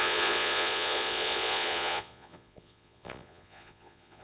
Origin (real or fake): fake